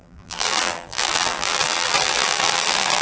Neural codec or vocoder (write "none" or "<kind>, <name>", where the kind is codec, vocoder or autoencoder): vocoder, BigVGAN v2